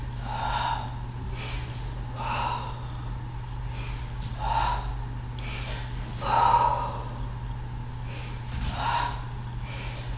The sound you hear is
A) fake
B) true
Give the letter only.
B